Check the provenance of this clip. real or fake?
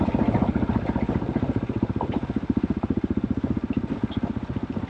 real